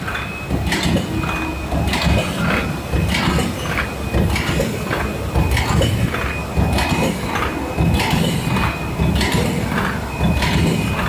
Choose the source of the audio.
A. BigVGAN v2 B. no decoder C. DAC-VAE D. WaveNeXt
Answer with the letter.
B